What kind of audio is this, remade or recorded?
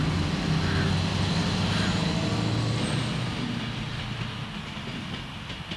recorded